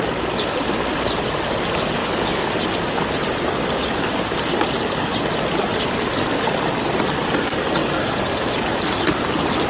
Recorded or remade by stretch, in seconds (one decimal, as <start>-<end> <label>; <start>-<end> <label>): 0.0-2.0 recorded; 2.0-2.5 remade; 2.5-9.7 recorded